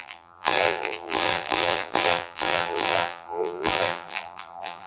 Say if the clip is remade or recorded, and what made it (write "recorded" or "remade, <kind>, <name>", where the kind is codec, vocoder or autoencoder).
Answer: remade, vocoder, BigVGAN v2